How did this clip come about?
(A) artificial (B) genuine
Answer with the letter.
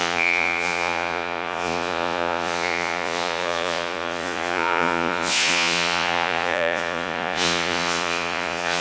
A